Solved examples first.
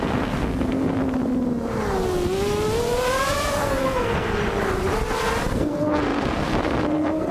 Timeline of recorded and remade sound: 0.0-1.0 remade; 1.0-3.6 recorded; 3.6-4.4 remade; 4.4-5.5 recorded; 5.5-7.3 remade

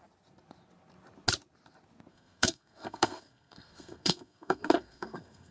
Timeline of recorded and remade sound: 0.0-2.1 recorded; 2.1-5.5 remade

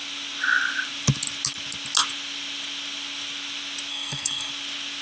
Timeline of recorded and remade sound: 0.0-3.9 recorded; 3.9-4.5 remade; 4.5-5.0 recorded

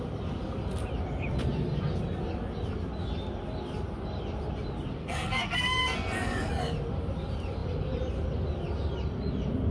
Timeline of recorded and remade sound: 0.0-5.0 recorded; 5.0-6.5 remade; 6.5-9.7 recorded

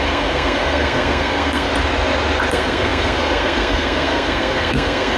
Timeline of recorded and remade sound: 0.0-1.7 remade; 1.7-2.5 recorded; 2.5-5.2 remade

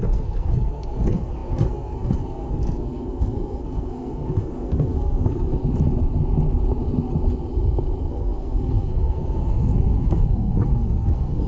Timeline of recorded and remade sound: 0.0-5.6 remade; 5.6-8.1 recorded; 8.1-11.5 remade

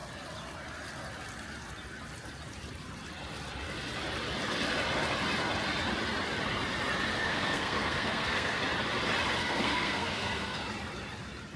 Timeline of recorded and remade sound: 0.0-7.2 recorded; 7.2-8.6 remade; 8.6-9.4 recorded; 9.4-10.6 remade; 10.6-11.6 recorded

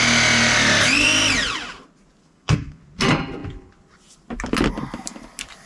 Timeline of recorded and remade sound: 0.0-2.2 recorded; 2.2-2.8 remade; 2.8-5.7 recorded